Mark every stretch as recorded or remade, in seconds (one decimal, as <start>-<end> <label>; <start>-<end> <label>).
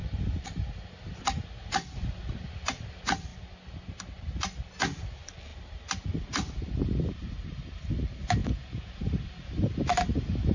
0.0-8.4 recorded; 8.4-9.0 remade; 9.0-10.5 recorded